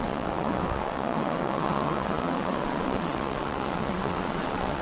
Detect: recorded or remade remade